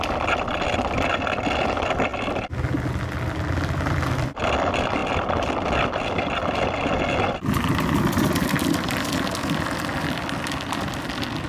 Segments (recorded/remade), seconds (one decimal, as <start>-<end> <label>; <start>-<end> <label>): 0.0-11.5 recorded